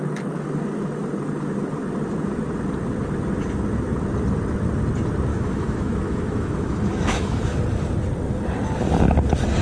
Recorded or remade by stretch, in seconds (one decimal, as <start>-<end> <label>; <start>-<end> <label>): 0.0-5.3 recorded; 5.3-7.4 remade; 7.4-9.6 recorded